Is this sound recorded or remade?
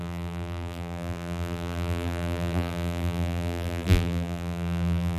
remade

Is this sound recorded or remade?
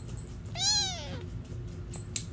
recorded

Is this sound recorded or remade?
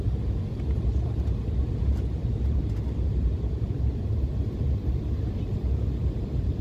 remade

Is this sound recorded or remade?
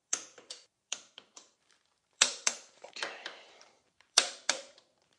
remade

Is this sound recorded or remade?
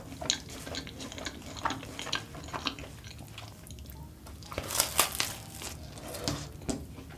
recorded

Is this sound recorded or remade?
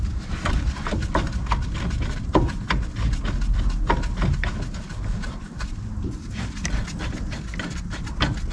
recorded